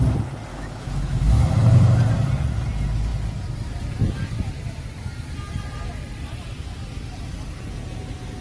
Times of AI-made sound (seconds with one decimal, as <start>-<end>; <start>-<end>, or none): 0.5-1.4